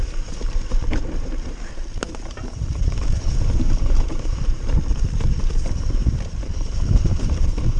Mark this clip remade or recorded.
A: remade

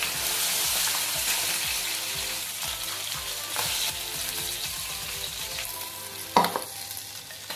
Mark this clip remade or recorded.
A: recorded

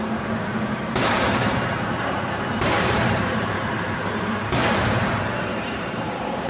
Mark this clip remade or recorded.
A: remade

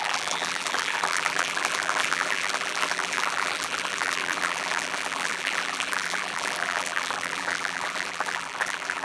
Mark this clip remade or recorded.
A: remade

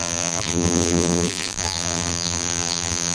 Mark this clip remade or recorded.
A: remade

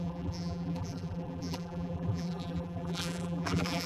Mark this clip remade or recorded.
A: remade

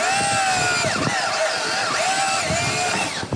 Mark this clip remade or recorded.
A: recorded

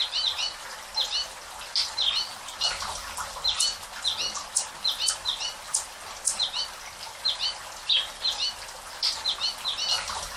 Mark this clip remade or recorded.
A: recorded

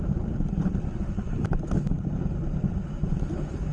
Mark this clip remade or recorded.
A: remade